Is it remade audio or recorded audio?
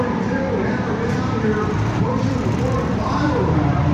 remade